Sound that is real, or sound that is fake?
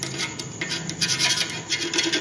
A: real